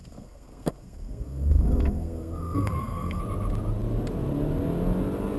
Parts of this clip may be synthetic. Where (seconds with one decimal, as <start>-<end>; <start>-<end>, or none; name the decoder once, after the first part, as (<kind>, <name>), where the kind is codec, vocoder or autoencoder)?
0.0-3.2 (codec, SNAC)